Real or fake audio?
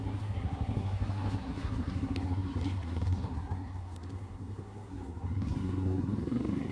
fake